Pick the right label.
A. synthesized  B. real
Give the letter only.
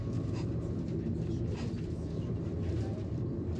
A